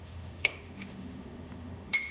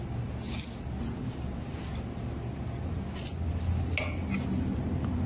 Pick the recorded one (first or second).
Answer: second